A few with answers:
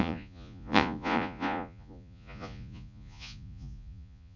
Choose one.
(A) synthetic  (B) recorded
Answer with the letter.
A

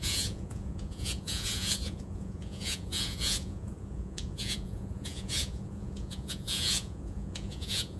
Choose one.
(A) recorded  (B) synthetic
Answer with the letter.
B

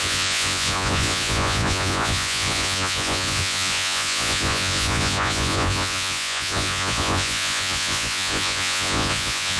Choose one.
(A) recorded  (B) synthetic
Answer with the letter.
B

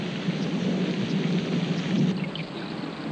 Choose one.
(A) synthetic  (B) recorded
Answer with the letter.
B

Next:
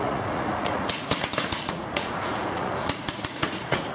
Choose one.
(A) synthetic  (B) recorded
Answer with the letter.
A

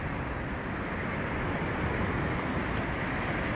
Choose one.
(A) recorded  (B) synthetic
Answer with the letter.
A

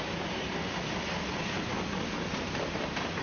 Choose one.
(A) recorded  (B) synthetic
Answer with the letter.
A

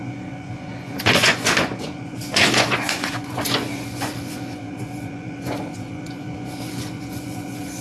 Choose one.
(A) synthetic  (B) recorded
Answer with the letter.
A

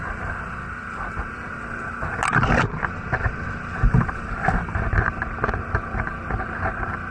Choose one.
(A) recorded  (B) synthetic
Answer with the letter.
A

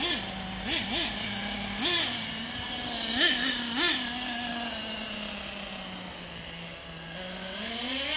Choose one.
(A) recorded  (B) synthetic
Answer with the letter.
A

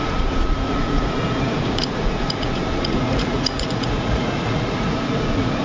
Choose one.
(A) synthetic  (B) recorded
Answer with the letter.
A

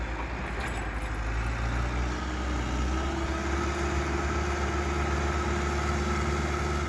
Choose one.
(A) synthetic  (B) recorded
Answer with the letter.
B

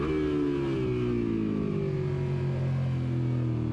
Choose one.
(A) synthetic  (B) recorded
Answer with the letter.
B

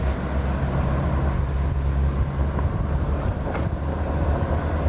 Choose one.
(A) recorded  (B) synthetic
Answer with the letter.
A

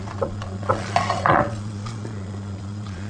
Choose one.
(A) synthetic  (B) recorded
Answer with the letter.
A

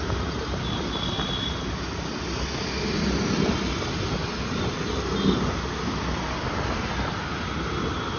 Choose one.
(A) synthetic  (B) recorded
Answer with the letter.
B